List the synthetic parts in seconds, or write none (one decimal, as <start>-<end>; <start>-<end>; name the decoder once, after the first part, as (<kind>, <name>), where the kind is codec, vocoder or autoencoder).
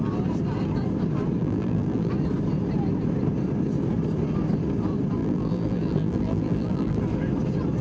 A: 1.4-2.1 (vocoder, BigVGAN v2); 5.2-7.0